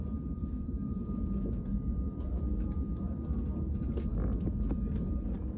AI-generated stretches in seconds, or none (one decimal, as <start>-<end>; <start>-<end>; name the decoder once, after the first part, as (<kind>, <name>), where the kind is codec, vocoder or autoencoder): 0.4-3.6 (vocoder, BigVGAN v2)